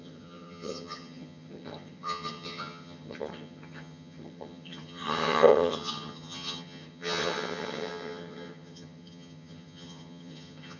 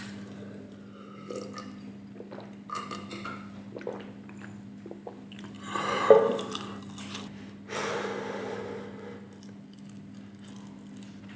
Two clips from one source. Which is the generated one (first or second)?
first